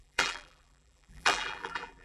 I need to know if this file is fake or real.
fake